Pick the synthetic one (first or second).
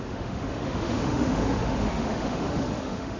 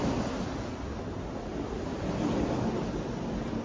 first